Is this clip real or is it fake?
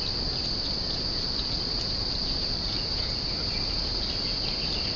real